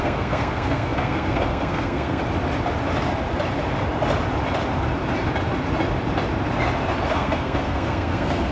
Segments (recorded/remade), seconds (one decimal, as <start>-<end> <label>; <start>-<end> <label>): 0.0-2.2 remade; 2.2-7.1 recorded; 7.1-8.5 remade